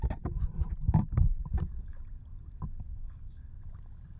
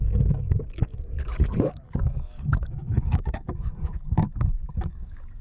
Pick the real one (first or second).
first